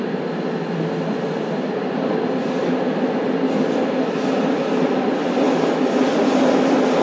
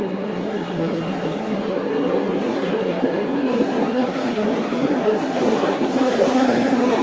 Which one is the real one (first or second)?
first